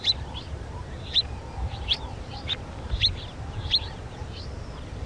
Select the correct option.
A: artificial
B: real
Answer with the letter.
B